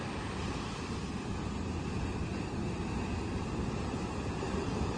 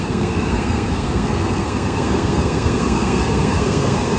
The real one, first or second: first